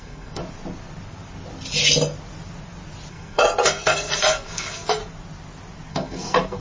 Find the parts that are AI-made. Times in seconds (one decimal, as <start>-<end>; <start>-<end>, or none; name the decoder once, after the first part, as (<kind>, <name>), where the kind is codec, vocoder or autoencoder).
0.0-0.4 (codec, SNAC); 3.1-5.0; 5.9-6.6